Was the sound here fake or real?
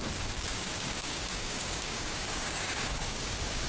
fake